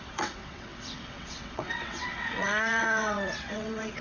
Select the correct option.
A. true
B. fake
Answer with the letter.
B